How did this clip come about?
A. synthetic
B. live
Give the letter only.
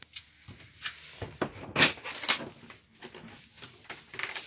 B